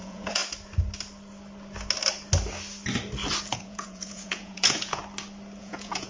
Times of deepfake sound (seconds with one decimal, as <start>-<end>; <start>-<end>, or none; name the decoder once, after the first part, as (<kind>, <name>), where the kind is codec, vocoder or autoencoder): 0.0-0.4 (vocoder, Vocos); 3.5-5.0; 5.6-6.1